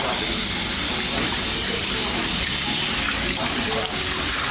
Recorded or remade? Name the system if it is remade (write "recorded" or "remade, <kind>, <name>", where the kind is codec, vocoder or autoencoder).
recorded